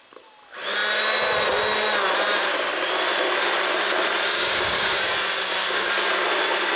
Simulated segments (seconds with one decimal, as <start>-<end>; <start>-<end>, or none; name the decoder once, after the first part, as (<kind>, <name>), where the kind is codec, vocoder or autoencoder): 4.3-5.9 (codec, DAC)